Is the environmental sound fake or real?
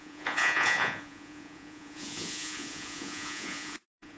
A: fake